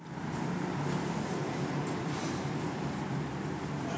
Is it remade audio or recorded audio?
remade